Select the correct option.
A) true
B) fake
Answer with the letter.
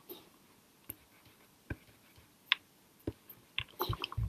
A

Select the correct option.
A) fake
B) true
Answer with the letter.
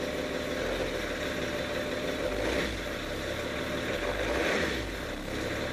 B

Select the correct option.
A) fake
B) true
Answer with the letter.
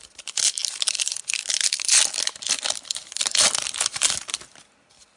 B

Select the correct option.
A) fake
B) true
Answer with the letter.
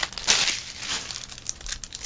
B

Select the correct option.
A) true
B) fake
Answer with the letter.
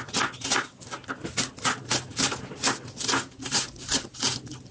A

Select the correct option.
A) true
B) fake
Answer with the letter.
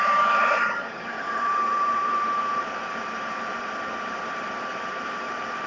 B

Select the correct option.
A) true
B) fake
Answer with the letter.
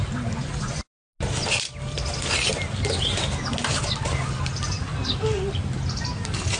A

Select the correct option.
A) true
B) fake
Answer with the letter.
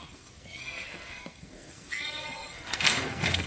B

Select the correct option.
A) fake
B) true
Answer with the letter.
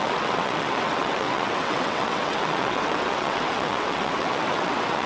A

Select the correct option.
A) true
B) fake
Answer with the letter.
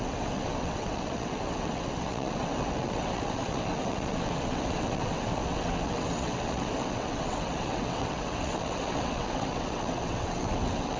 B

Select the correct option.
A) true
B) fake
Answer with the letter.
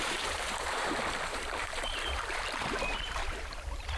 B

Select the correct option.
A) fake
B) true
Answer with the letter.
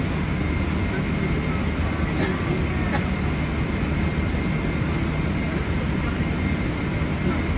B